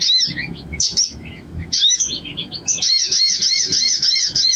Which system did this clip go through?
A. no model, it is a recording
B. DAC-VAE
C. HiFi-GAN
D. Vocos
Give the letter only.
B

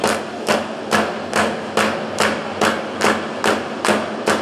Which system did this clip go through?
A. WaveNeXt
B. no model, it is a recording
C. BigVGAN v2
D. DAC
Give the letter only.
B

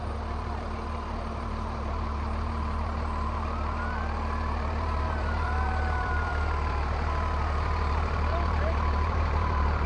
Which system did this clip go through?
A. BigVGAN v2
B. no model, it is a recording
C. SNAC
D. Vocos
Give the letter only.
A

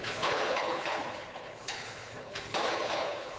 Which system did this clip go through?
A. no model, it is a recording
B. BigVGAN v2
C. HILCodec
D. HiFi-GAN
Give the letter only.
C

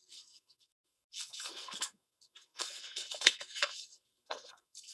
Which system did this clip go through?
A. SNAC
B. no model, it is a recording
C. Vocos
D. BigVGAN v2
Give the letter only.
A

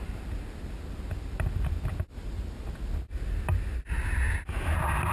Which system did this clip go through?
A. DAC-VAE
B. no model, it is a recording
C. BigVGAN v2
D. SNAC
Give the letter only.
B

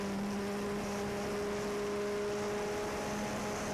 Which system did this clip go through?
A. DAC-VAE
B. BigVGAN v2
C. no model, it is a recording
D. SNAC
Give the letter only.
C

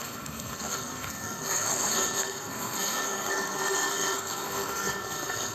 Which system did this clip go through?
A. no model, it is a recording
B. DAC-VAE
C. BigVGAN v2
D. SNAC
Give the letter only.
D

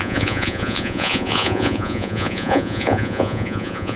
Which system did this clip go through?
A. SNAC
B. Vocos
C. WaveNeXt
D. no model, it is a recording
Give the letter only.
B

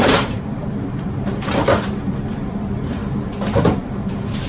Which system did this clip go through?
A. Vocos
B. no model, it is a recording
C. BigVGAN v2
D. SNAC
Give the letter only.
C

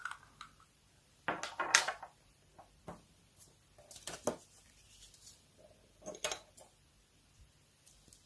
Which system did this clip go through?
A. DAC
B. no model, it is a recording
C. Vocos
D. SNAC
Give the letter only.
B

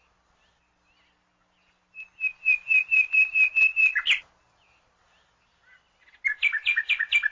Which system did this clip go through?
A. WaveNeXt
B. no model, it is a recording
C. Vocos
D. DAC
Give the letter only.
B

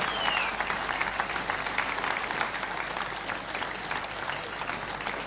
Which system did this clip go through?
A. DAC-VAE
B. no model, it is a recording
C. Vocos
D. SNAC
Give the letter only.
B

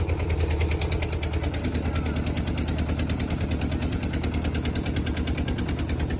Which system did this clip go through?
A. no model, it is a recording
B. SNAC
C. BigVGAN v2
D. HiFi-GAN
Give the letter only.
A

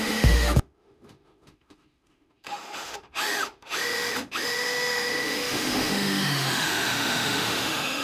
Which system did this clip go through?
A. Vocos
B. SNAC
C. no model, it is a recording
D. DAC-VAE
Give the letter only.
D